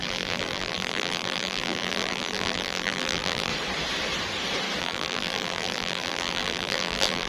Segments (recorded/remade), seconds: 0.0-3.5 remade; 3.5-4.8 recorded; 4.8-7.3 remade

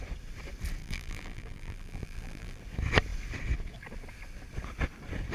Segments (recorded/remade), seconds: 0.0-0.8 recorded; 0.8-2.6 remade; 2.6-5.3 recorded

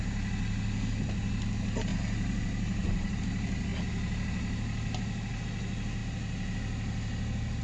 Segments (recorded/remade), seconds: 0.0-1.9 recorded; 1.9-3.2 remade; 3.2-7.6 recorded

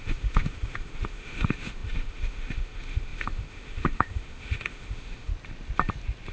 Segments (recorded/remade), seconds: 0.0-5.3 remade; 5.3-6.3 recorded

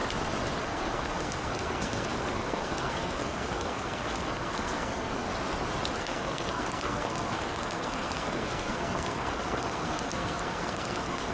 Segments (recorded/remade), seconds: 0.0-0.6 recorded; 0.6-5.3 remade; 5.3-6.0 recorded; 6.0-11.3 remade